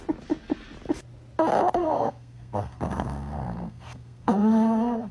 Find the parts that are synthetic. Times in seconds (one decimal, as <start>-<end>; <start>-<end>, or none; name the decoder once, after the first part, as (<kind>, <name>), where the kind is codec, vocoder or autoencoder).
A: 1.8-5.1 (codec, SNAC)